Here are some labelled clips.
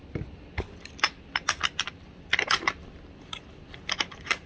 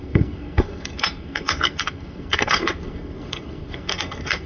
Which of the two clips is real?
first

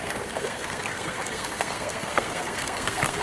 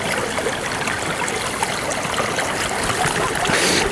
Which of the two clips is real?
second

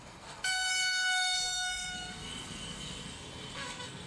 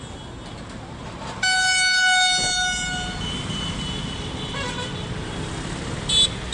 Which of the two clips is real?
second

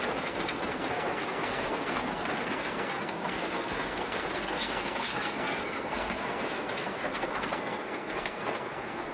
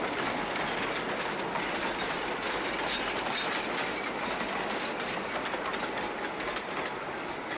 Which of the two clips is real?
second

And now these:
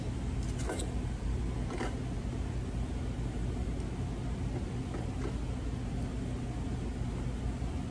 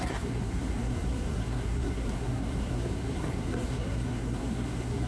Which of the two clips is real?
first